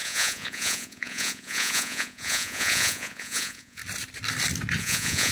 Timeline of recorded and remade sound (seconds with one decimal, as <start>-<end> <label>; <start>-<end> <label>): 0.0-3.8 remade; 3.8-4.8 recorded; 4.8-5.3 remade